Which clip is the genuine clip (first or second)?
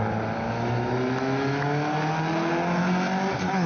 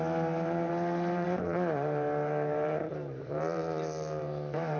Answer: first